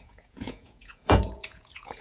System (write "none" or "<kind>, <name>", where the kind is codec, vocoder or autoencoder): vocoder, Vocos